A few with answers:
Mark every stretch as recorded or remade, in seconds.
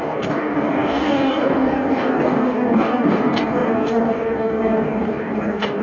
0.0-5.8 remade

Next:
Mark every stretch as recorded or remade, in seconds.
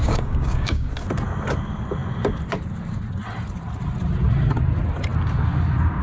0.0-0.9 remade; 0.9-6.0 recorded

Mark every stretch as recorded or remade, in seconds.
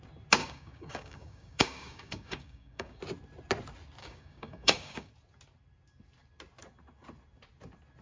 0.0-0.4 recorded; 0.4-3.0 remade; 3.0-4.0 recorded; 4.0-5.1 remade; 5.1-8.0 recorded